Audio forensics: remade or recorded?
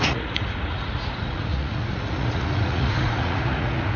remade